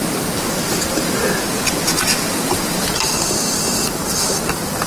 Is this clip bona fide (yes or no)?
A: yes